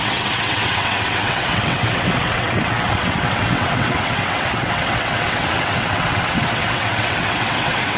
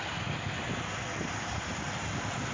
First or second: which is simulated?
first